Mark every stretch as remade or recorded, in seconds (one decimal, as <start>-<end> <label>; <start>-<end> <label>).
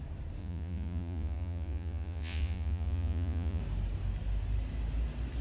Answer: 0.0-0.4 recorded; 0.4-3.6 remade; 3.6-5.4 recorded